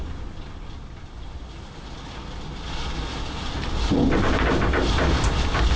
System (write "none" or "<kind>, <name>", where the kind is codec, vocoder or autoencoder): none